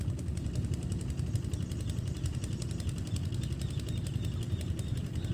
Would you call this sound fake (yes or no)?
no